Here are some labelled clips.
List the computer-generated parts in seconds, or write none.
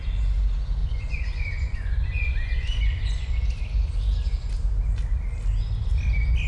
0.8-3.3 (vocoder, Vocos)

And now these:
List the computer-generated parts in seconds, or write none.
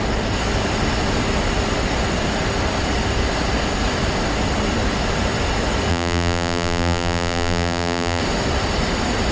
5.9-8.2 (vocoder, BigVGAN v2)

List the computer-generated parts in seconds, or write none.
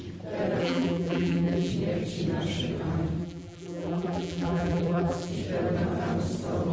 0.6-1.7 (vocoder, BigVGAN v2); 3.2-5.3